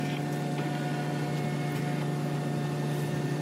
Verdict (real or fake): real